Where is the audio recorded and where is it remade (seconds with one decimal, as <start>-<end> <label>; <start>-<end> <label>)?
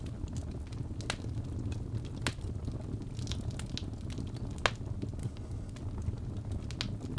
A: 0.0-5.2 recorded; 5.2-5.7 remade; 5.7-7.2 recorded